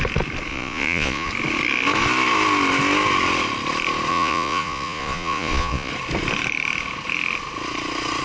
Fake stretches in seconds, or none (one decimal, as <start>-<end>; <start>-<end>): 0.5-1.3; 4.1-5.9